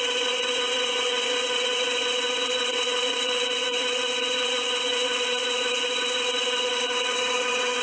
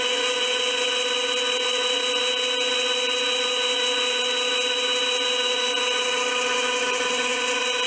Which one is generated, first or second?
first